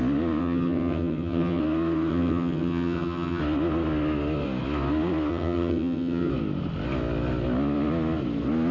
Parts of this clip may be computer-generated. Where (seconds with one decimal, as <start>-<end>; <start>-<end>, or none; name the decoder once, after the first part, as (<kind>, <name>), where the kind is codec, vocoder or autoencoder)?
0.4-1.6 (vocoder, HiFi-GAN); 2.1-3.4; 5.3-6.3